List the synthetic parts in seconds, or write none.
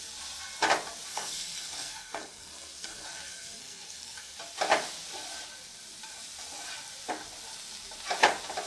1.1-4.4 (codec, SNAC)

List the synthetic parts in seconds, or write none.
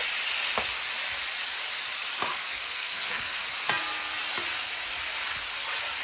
2.3-3.5 (codec, SNAC)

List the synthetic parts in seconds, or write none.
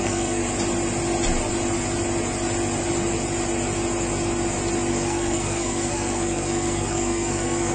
0.0-0.4 (codec, SNAC); 4.9-7.7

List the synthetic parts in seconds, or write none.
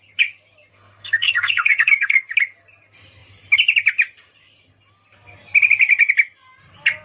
0.7-2.3 (codec, SNAC)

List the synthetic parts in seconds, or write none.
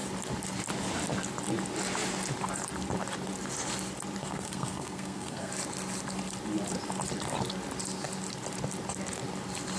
4.2-5.5 (codec, SNAC)